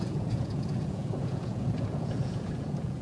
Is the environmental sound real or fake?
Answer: fake